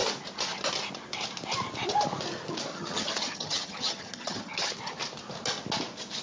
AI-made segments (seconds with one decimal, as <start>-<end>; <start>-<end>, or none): 2.7-4.7